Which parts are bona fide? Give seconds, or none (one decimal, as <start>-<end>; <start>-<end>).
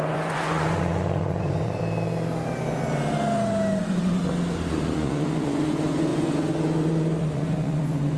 1.8-3.8; 4.2-4.7